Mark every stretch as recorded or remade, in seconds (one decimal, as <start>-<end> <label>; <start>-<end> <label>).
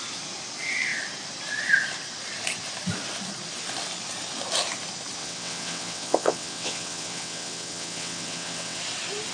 0.0-5.2 recorded; 5.2-8.8 remade; 8.8-9.3 recorded